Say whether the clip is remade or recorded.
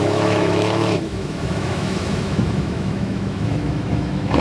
remade